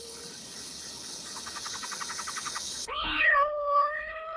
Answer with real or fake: fake